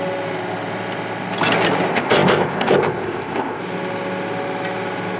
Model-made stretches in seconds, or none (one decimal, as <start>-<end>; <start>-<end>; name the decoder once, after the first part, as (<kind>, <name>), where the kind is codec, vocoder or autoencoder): 1.9-3.6 (codec, ZipCodec)